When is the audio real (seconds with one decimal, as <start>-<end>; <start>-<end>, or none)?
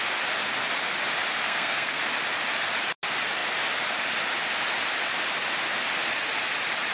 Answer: 0.0-1.3; 2.0-6.9